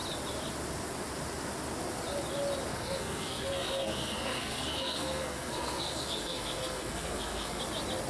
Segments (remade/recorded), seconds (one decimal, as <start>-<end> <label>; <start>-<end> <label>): 0.0-2.7 recorded; 2.7-7.6 remade; 7.6-8.1 recorded